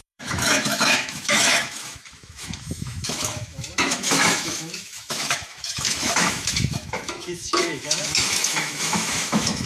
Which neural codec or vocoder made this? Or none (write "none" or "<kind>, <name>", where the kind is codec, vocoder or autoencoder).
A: autoencoder, DAC-VAE